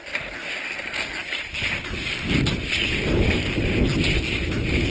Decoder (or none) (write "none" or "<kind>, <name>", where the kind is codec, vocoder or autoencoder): none